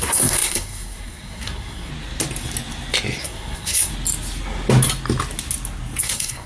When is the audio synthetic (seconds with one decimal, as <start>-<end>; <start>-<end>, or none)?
0.0-1.9; 3.2-3.9; 6.0-6.5